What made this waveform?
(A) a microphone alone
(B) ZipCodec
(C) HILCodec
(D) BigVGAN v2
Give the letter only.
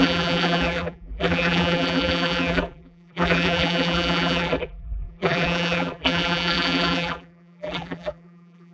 D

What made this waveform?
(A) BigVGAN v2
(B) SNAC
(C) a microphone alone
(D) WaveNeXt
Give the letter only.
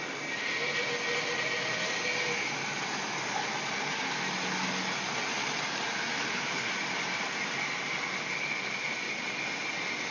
C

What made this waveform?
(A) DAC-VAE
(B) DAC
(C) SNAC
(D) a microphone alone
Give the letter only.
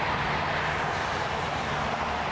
D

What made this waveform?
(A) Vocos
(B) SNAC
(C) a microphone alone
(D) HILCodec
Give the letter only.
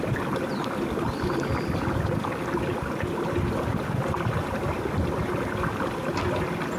C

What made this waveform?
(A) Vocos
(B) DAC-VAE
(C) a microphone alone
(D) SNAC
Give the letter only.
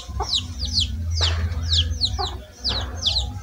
C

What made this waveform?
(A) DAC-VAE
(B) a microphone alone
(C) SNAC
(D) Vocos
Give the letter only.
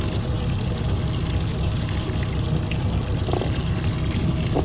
B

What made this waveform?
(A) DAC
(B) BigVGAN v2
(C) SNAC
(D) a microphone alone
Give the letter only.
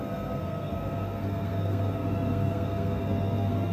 C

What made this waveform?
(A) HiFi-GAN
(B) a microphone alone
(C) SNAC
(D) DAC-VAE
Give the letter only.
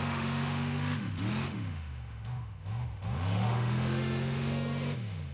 D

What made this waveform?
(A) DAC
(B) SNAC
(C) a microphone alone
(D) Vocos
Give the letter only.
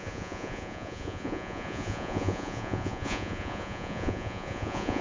D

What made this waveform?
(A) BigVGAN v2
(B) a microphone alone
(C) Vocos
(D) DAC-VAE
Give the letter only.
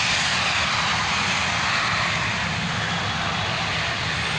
B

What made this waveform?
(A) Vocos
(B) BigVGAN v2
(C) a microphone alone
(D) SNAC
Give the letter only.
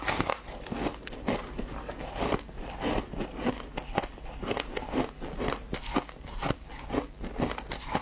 C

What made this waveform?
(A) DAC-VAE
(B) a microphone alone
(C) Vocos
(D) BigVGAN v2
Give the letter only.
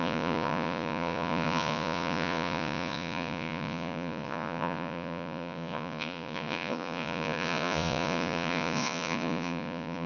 C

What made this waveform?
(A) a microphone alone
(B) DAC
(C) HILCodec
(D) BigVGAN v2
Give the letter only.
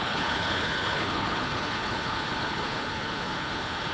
C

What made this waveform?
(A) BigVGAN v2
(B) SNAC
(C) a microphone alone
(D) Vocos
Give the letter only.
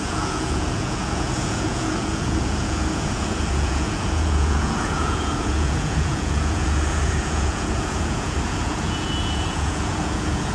D